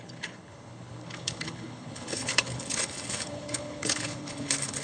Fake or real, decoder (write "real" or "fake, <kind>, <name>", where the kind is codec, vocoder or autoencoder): fake, codec, HILCodec